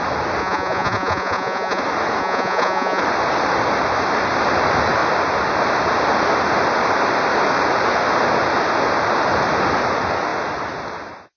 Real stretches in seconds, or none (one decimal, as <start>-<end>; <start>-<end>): 0.0-0.4; 1.8-2.2; 3.0-11.4